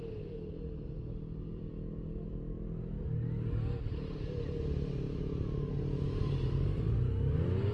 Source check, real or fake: real